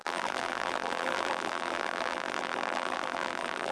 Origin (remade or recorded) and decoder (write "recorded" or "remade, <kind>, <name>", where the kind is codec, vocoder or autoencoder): remade, vocoder, BigVGAN v2